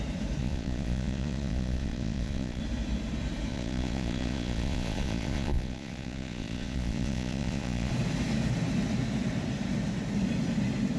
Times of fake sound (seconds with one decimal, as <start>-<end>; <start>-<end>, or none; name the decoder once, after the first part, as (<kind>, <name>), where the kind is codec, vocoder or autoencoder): 0.4-2.6 (vocoder, Vocos); 3.5-7.9